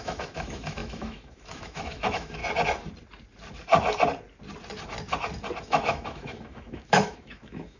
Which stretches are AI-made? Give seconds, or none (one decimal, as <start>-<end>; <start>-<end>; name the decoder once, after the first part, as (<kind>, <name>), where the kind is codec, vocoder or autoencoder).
0.0-2.4 (autoencoder, DAC-VAE); 5.6-7.8